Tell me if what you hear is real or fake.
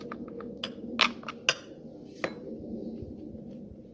real